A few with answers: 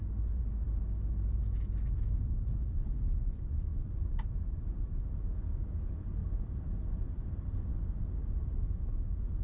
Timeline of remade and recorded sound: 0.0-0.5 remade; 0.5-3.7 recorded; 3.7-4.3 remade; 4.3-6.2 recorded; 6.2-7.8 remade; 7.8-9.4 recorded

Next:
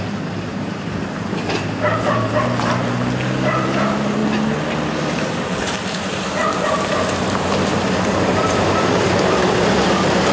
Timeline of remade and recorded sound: 0.0-4.2 remade; 4.2-4.9 recorded; 4.9-6.4 remade; 6.4-7.2 recorded; 7.2-10.3 remade

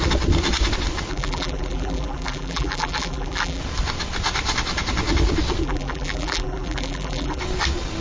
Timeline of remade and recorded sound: 0.0-1.1 recorded; 1.1-3.6 remade; 3.6-5.6 recorded; 5.6-7.4 remade; 7.4-8.0 recorded

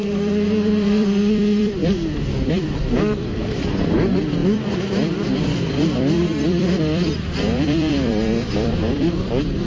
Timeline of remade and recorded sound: 0.0-9.7 remade

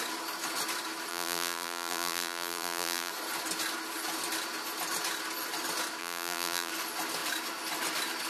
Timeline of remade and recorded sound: 0.0-1.1 recorded; 1.1-3.1 remade; 3.1-6.0 recorded; 6.0-6.7 remade; 6.7-8.3 recorded

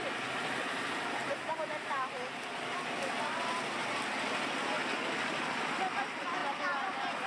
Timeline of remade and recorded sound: 0.0-1.2 recorded; 1.2-2.5 remade; 2.5-6.4 recorded; 6.4-7.3 remade